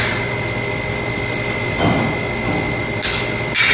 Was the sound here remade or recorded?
recorded